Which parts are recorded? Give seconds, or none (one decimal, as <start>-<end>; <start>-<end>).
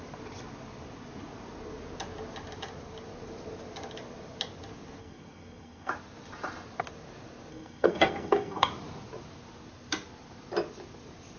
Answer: 0.0-5.0; 5.9-7.5; 8.7-11.4